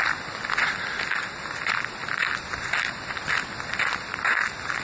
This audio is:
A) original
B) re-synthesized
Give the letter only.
A